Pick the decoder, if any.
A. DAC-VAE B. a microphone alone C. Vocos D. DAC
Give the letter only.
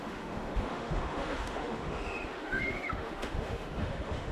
A